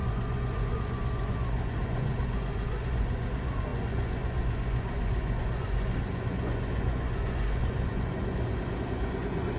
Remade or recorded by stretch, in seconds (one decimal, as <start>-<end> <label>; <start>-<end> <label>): 0.0-9.6 remade